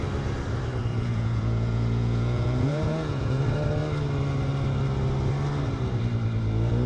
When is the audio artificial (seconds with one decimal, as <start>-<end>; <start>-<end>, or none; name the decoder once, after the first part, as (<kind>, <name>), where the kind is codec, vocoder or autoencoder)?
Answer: 0.9-3.4 (vocoder, Vocos)